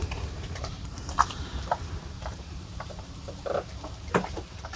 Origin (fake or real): fake